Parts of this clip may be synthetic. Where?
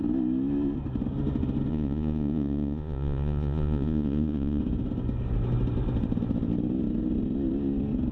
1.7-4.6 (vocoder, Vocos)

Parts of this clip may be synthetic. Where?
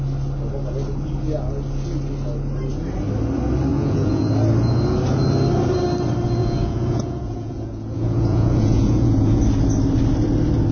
3.7-4.3 (vocoder, Vocos); 6.4-9.4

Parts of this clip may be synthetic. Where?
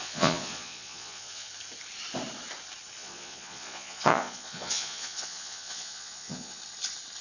0.0-1.5 (vocoder, Vocos); 3.0-6.6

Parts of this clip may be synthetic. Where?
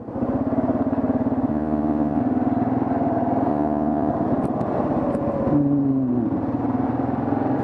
1.5-2.2 (vocoder, Vocos); 3.5-4.1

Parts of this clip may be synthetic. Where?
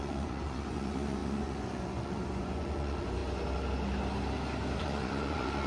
0.0-3.2 (vocoder, Vocos); 4.8-5.7